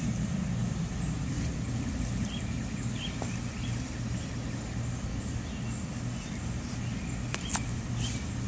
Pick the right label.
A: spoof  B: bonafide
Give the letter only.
B